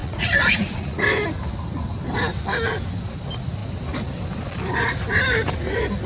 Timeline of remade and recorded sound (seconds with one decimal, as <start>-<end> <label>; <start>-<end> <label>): 0.0-1.0 remade; 1.0-6.1 recorded